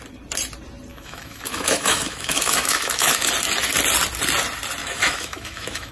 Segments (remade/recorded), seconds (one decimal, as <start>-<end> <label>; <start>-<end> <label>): 0.0-0.9 recorded; 0.9-3.3 remade; 3.3-4.8 recorded; 4.8-5.9 remade